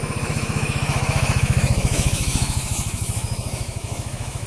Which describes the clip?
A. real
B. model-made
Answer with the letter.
B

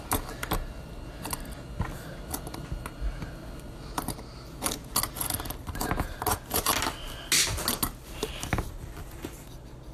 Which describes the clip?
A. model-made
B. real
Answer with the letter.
B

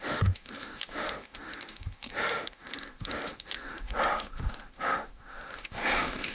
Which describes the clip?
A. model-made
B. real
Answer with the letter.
A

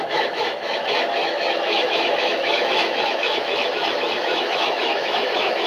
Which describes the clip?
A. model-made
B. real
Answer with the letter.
A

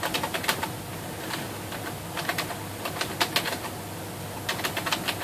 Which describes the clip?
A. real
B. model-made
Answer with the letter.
A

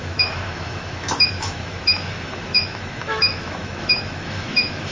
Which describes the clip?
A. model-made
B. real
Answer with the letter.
A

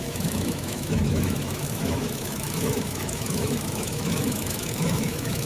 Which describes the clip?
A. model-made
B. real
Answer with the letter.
A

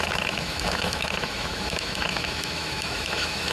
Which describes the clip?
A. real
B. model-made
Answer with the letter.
B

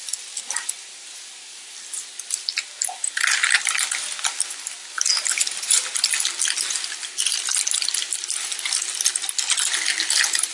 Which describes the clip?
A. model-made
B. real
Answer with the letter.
B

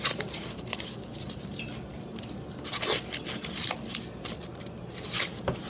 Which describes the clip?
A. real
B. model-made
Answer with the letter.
A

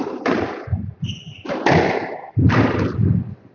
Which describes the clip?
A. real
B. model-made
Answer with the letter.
A